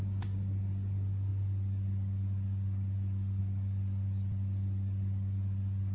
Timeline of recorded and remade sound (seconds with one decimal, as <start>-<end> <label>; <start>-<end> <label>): 0.0-5.9 recorded